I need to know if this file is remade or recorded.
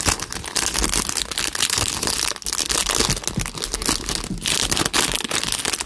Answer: recorded